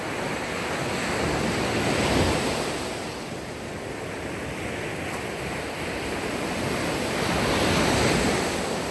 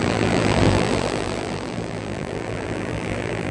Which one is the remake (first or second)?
second